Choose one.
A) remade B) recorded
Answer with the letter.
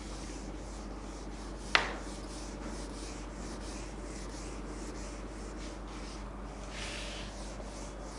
B